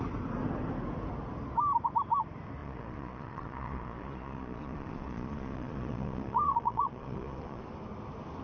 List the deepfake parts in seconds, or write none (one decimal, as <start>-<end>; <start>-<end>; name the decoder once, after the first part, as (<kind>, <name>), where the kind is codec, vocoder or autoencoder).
2.6-7.6 (vocoder, Vocos)